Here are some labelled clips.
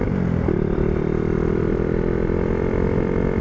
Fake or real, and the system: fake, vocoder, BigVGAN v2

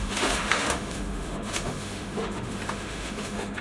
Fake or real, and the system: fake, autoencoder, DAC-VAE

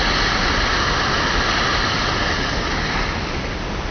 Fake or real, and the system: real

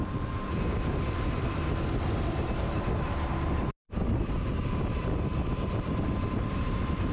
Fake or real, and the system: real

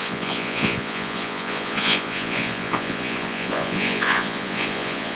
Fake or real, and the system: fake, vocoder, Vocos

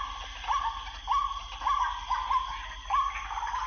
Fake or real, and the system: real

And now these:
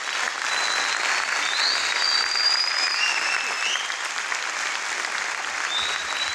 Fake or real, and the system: real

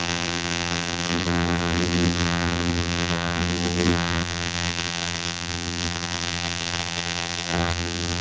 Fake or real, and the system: fake, vocoder, BigVGAN v2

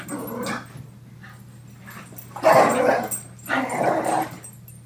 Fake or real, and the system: real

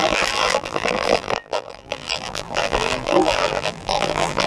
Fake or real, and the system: fake, vocoder, BigVGAN v2